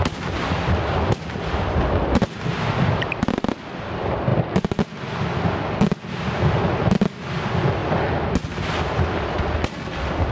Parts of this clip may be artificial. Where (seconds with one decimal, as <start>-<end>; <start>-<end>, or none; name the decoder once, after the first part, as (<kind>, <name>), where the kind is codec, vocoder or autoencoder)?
none

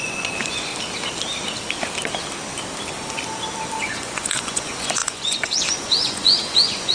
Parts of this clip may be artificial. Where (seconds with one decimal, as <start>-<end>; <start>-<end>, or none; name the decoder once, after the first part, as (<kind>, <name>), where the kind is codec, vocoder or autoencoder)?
0.0-0.7 (vocoder, Vocos); 3.8-6.9

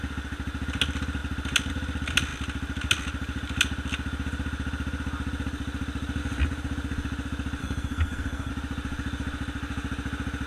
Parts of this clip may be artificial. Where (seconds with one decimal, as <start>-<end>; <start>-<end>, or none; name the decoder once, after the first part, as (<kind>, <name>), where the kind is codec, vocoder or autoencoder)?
7.6-8.5 (codec, SNAC)

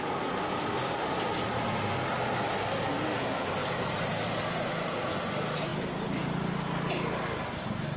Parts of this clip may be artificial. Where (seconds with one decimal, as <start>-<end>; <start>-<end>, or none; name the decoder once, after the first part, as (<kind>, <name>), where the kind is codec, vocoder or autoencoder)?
none